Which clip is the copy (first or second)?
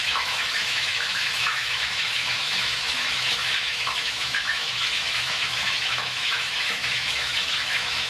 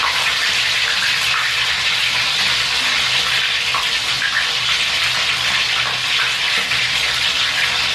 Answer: first